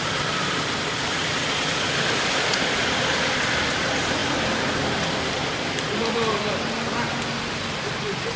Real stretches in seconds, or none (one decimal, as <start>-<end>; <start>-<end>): 0.0-8.4

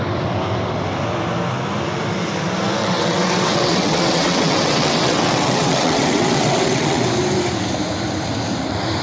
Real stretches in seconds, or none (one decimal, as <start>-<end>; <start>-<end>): 0.0-2.8; 7.1-9.0

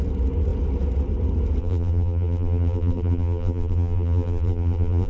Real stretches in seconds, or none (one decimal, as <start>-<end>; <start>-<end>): 0.0-1.6

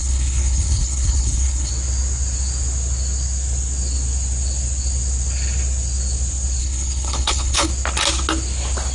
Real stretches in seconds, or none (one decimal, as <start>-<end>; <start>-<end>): 1.7-6.6; 7.7-8.9

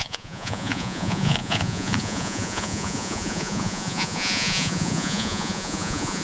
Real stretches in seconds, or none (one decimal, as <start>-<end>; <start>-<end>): none